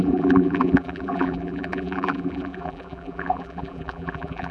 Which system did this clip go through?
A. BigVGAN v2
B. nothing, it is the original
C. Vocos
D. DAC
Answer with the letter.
A